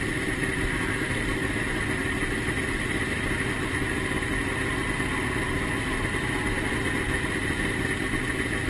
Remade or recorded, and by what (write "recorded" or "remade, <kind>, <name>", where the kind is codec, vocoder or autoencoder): recorded